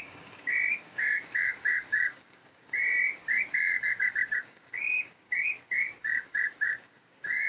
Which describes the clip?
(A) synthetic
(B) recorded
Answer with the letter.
A